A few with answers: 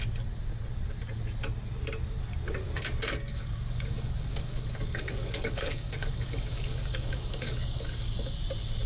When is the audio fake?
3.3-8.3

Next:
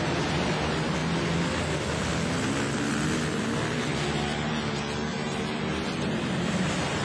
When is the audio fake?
none

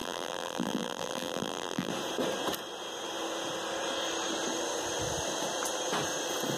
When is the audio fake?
0.0-1.9

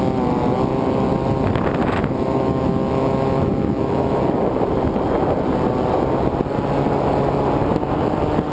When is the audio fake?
1.8-4.2

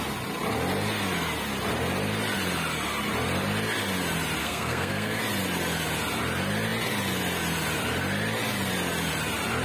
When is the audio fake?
4.4-5.2

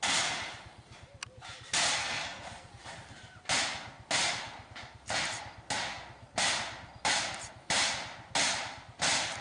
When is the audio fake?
2.0-2.7